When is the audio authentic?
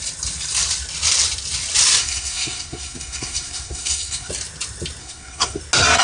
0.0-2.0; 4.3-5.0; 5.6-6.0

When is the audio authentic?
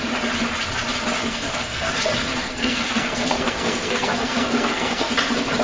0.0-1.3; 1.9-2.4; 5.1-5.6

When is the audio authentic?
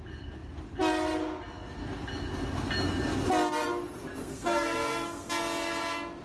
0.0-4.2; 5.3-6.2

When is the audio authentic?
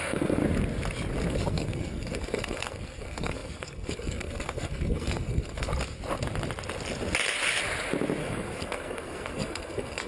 0.4-1.3; 5.7-8.2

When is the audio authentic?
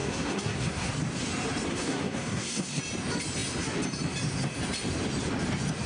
0.9-1.7; 2.8-5.9